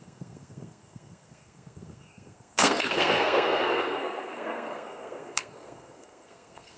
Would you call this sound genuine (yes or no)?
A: no